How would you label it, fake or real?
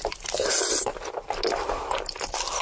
real